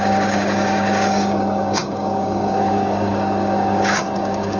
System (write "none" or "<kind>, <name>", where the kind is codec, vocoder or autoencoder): codec, DAC